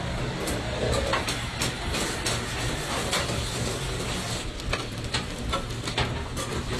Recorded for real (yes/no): yes